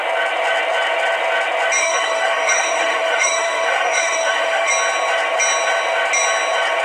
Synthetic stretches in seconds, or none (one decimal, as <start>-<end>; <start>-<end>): 1.8-4.7